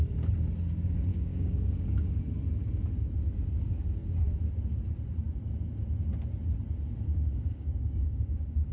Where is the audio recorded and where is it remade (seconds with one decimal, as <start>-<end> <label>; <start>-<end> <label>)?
0.0-1.1 recorded; 1.1-2.2 remade; 2.2-7.1 recorded; 7.1-8.7 remade

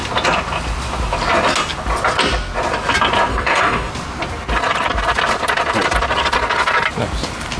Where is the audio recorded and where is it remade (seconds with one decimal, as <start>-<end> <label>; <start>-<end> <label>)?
0.0-3.3 recorded; 3.3-3.9 remade; 3.9-7.6 recorded

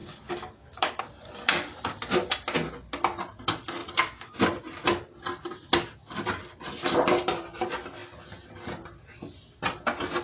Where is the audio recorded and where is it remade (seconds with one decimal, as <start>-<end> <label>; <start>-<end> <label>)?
0.0-1.0 remade; 1.0-10.2 recorded

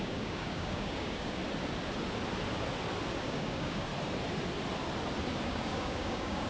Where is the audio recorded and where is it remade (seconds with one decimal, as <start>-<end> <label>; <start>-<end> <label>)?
0.0-1.4 remade; 1.4-3.2 recorded; 3.2-3.9 remade; 3.9-5.4 recorded; 5.4-6.5 remade